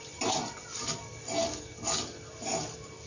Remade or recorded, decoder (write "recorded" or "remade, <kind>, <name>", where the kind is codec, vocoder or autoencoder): recorded